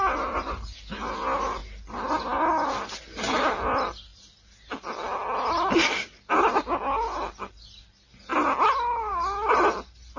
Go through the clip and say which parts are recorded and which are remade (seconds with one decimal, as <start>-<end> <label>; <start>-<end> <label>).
0.0-10.2 recorded